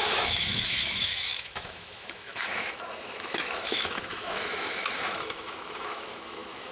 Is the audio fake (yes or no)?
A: yes